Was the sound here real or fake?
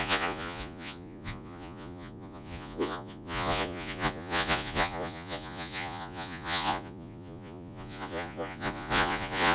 fake